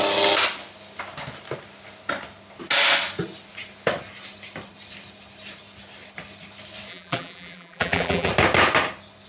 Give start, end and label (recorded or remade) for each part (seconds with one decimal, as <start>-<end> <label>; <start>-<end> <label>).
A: 0.0-6.9 recorded; 6.9-8.3 remade; 8.3-9.3 recorded